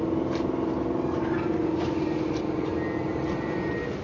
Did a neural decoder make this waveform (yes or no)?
no